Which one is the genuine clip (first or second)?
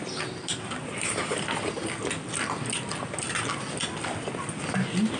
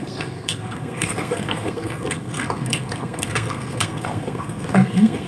first